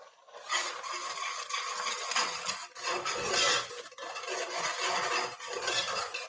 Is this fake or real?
real